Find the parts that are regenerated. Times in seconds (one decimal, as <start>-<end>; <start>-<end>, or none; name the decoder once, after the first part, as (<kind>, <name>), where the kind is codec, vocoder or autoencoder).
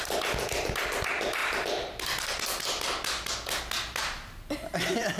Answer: 1.4-2.0 (vocoder, BigVGAN v2)